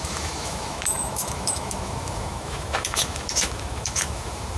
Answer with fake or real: fake